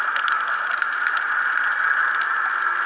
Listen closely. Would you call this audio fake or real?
real